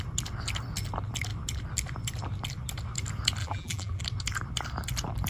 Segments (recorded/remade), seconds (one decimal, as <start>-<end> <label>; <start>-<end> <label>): 0.0-3.4 recorded; 3.4-4.0 remade; 4.0-5.3 recorded